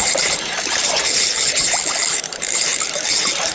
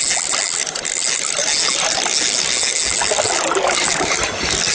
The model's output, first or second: first